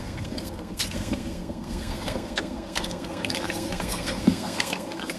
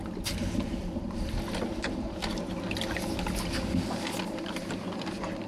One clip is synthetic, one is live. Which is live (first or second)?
second